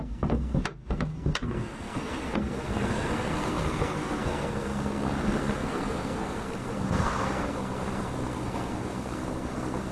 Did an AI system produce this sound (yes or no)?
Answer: yes